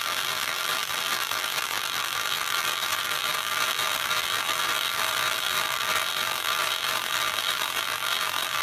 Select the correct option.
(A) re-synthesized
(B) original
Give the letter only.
A